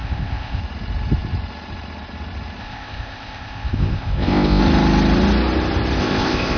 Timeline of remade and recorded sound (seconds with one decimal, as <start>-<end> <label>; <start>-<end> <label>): 0.0-0.6 remade; 0.6-2.6 recorded; 2.6-4.6 remade; 4.6-6.0 recorded; 6.0-6.6 remade